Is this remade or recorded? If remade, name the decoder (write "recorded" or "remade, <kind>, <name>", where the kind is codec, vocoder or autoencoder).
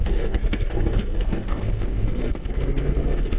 remade, codec, SNAC